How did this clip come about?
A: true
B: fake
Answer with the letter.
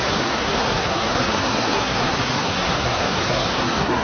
B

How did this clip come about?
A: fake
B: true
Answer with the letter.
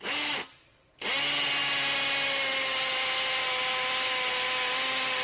B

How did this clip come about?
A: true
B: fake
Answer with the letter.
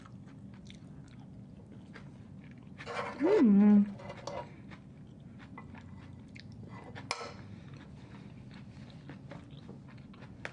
A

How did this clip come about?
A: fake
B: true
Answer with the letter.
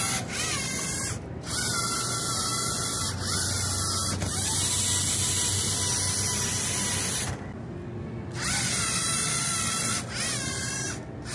B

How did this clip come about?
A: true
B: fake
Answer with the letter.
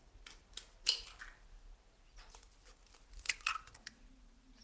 A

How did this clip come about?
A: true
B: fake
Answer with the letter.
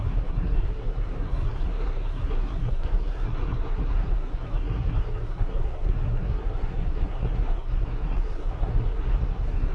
B